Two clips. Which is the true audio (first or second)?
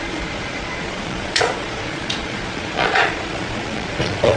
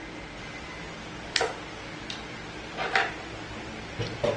second